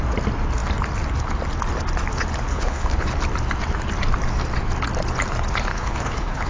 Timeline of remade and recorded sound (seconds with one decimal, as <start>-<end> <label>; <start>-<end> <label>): 0.0-2.5 recorded; 2.5-3.1 remade; 3.1-5.7 recorded; 5.7-6.5 remade